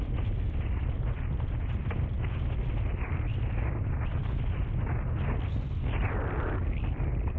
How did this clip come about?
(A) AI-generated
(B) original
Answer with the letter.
B